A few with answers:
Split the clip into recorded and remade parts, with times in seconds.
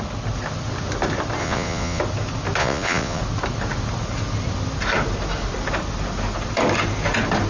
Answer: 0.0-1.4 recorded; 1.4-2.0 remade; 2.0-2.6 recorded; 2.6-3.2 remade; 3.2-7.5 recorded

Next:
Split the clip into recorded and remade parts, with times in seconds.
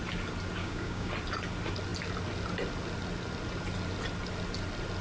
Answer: 0.0-0.6 recorded; 0.6-1.1 remade; 1.1-5.0 recorded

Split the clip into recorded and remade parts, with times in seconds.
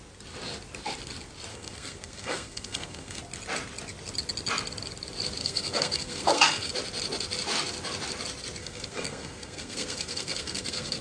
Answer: 0.0-1.5 recorded; 1.5-3.2 remade; 3.2-5.4 recorded; 5.4-6.7 remade; 6.7-8.6 recorded; 8.6-11.0 remade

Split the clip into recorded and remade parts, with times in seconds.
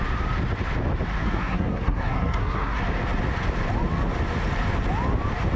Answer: 0.0-1.2 recorded; 1.2-2.8 remade; 2.8-5.6 recorded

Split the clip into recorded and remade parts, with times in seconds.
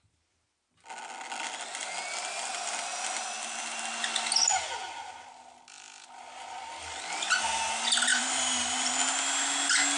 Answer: 0.0-8.1 recorded; 8.1-8.9 remade; 8.9-10.0 recorded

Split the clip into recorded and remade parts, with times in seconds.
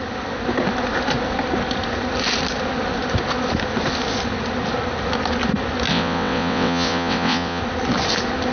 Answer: 0.0-5.9 recorded; 5.9-7.6 remade; 7.6-8.5 recorded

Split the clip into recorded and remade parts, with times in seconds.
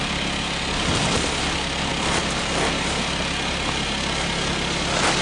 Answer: 0.0-5.2 recorded